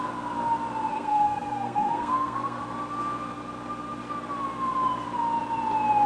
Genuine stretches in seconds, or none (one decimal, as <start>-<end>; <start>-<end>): 0.0-0.9; 2.6-6.1